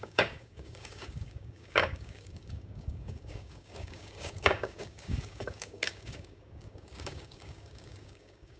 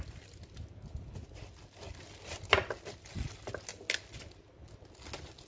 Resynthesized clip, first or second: first